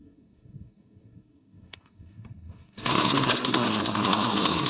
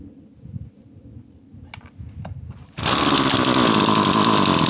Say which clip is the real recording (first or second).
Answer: second